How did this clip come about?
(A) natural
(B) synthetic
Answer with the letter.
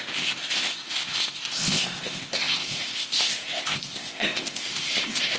B